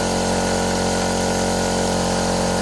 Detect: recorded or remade recorded